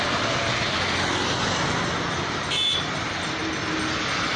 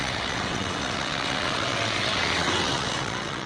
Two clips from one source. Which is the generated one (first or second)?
second